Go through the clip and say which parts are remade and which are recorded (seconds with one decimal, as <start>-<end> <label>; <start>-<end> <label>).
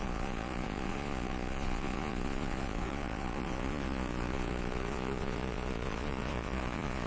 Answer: 0.0-7.1 remade